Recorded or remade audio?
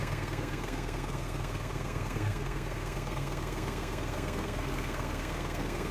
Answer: remade